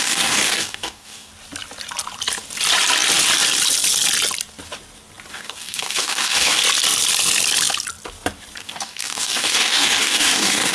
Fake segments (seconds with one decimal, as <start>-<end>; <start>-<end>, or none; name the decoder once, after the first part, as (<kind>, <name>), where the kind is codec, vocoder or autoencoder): 0.0-1.3 (codec, DAC); 5.3-6.6; 8.6-10.7